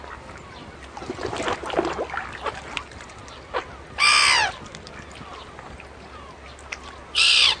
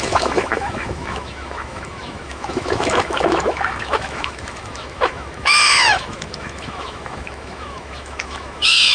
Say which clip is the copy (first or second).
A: second